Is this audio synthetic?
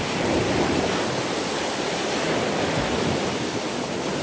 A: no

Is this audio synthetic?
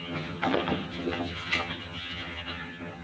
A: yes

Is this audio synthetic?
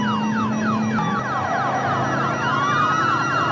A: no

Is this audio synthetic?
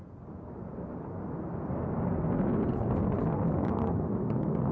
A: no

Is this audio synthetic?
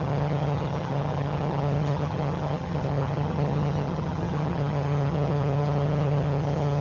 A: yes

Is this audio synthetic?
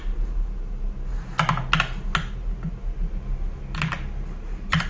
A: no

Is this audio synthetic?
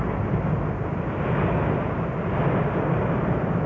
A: no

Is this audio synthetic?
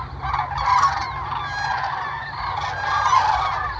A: no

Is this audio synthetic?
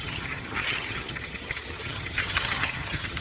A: yes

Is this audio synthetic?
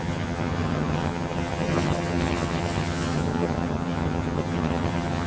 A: yes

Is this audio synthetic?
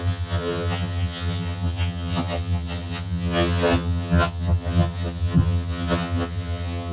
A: yes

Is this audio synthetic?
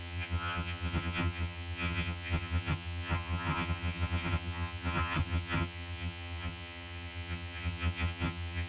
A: yes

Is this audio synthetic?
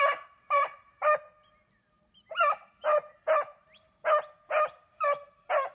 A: no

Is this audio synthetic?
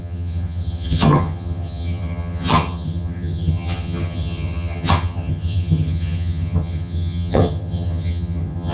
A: yes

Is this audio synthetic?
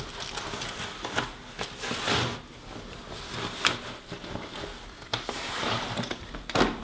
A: no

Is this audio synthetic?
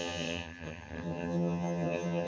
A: yes